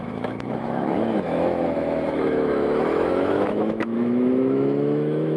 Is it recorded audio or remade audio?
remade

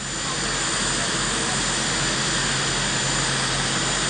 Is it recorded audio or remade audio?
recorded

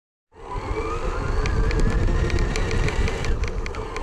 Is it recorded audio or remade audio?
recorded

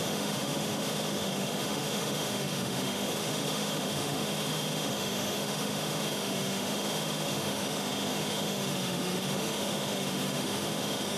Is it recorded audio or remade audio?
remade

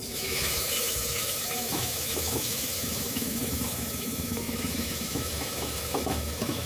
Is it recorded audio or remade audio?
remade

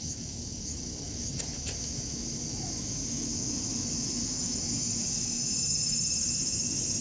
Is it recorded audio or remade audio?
remade